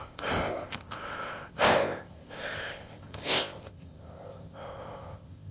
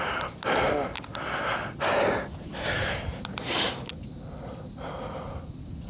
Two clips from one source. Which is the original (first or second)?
second